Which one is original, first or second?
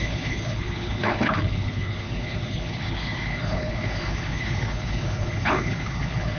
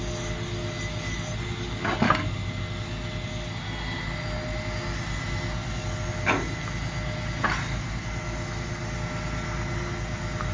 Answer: second